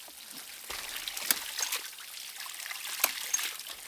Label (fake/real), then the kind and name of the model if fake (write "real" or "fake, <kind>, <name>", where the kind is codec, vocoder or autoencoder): real